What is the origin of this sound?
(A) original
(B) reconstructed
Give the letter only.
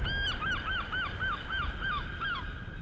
A